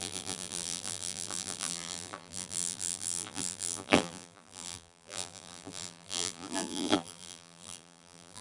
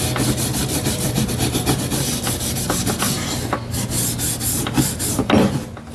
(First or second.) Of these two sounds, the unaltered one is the second